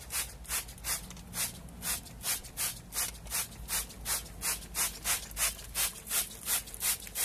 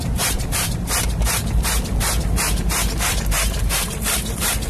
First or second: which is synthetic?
second